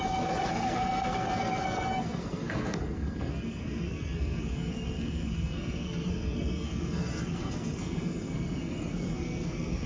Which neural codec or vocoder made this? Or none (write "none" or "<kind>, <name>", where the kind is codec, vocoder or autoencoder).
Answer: codec, SNAC